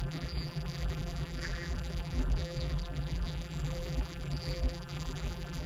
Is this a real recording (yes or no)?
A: no